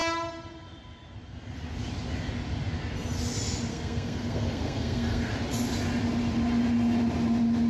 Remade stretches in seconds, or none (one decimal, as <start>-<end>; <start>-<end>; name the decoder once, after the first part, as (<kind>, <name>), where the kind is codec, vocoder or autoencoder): 3.7-5.3 (codec, SNAC)